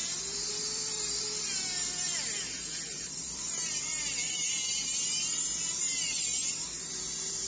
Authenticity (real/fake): fake